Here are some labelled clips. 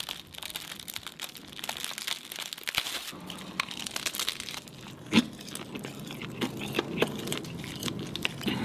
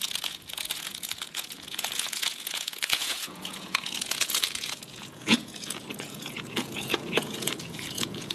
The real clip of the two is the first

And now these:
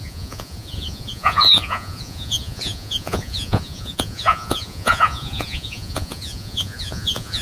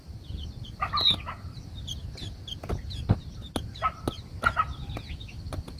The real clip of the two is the second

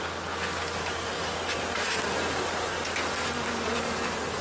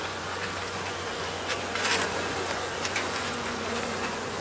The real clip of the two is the first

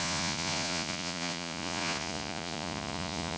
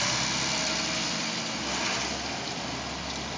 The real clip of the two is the second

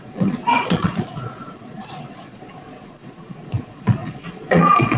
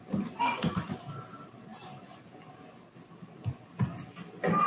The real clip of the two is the second